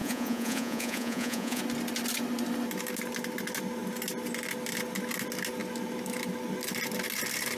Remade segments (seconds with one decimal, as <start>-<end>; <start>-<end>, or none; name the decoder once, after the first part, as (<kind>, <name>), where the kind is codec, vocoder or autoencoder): 0.0-1.6 (vocoder, Vocos)

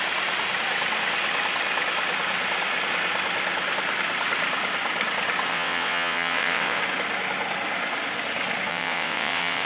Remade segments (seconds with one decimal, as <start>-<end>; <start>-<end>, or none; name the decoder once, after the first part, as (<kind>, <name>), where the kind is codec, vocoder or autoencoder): 5.5-6.8 (vocoder, WaveNeXt); 8.7-9.7

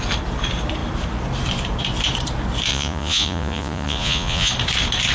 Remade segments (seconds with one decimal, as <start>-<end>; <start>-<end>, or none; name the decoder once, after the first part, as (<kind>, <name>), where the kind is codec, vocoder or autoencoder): 2.7-4.5 (vocoder, Vocos)